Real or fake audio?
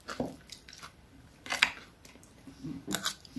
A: fake